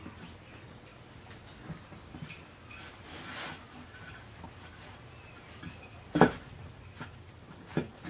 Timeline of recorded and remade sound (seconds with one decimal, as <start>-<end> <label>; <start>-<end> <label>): 0.0-8.1 recorded